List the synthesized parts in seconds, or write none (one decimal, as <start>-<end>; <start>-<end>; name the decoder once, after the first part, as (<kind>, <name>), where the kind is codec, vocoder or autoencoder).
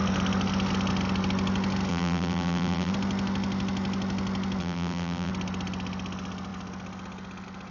1.9-2.9 (vocoder, BigVGAN v2); 4.6-5.3